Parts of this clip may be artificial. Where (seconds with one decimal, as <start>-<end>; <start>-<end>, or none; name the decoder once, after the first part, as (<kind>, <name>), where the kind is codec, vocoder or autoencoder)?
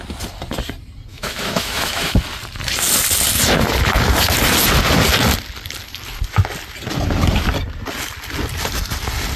1.1-2.2 (autoencoder, DAC-VAE)